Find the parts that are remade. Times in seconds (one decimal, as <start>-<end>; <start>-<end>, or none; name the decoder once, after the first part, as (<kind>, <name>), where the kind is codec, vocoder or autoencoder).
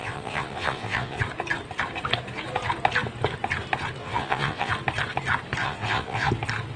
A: 0.0-1.2 (vocoder, WaveNeXt); 4.0-4.7; 5.6-6.3